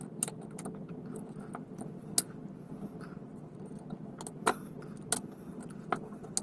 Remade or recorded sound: recorded